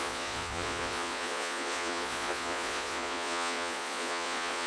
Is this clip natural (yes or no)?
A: no